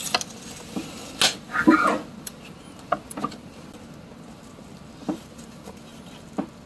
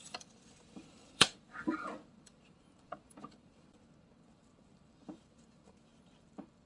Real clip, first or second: first